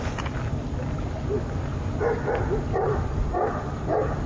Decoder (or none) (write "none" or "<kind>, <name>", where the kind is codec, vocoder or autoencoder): none